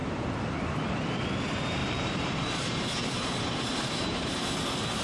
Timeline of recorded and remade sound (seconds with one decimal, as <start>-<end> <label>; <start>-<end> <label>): 0.0-1.8 recorded; 1.8-5.0 remade